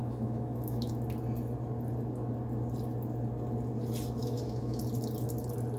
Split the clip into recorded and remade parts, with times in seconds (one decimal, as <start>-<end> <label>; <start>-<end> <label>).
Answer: 0.0-0.9 remade; 0.9-4.2 recorded; 4.2-4.8 remade; 4.8-5.8 recorded